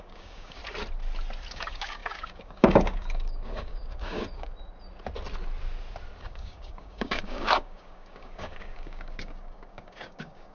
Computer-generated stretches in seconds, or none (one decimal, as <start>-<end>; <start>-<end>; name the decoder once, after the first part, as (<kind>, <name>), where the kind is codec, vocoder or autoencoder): 0.0-0.6 (codec, DAC); 1.5-4.5; 6.2-10.5